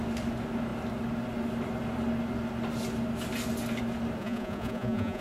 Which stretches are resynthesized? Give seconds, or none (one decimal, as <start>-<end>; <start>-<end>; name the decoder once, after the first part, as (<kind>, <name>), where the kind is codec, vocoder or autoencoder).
4.2-5.2 (vocoder, Vocos)